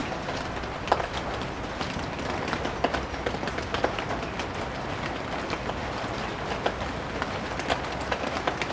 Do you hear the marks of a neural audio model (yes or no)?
no